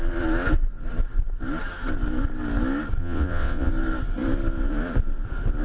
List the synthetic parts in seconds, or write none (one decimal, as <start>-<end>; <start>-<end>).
3.0-3.7